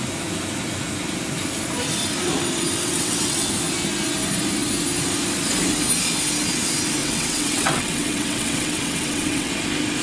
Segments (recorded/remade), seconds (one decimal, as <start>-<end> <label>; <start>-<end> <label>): 0.0-2.8 recorded; 2.8-3.5 remade; 3.5-7.0 recorded; 7.0-9.5 remade; 9.5-10.0 recorded